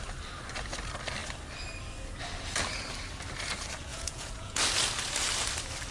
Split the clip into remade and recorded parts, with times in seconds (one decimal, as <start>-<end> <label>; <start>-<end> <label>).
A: 0.0-3.9 recorded; 3.9-4.6 remade; 4.6-5.9 recorded